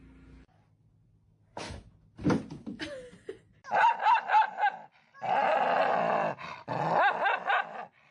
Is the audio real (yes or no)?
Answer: yes